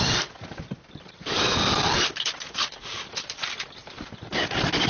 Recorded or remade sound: recorded